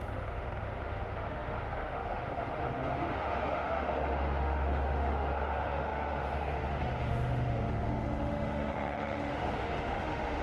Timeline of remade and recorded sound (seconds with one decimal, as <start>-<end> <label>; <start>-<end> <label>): 0.0-10.4 remade